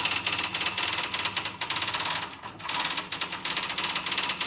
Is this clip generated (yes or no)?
no